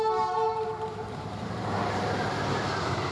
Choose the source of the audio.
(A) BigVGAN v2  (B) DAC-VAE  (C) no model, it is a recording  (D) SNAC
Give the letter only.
A